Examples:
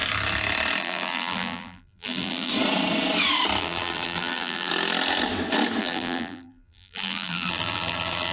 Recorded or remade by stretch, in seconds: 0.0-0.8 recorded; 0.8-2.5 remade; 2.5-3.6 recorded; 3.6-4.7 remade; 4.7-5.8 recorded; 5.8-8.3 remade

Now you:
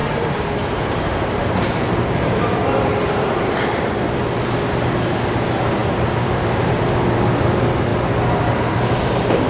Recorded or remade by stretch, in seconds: 0.0-3.6 remade; 3.6-9.5 recorded

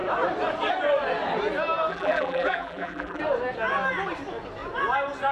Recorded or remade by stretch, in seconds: 0.0-1.9 recorded; 1.9-3.2 remade; 3.2-5.3 recorded

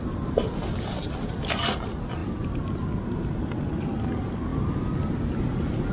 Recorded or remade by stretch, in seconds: 0.0-2.2 recorded; 2.2-2.7 remade; 2.7-5.9 recorded

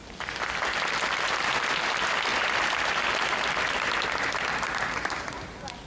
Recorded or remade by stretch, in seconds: 0.0-0.9 remade; 0.9-2.3 recorded; 2.3-5.9 remade